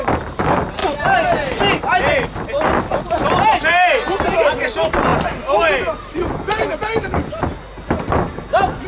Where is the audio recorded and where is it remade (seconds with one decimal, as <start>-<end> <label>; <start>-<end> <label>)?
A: 0.0-8.9 recorded